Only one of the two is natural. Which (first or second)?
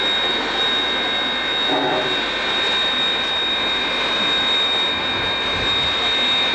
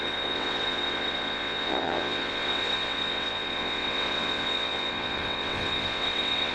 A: first